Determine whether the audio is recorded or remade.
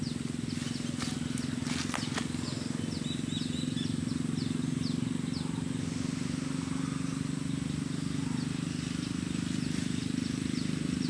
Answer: recorded